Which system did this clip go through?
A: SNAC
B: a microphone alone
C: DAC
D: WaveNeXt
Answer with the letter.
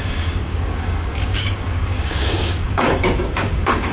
C